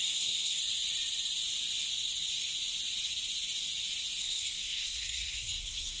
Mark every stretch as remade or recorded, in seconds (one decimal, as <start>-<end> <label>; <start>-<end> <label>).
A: 0.0-0.6 remade; 0.6-4.2 recorded; 4.2-6.0 remade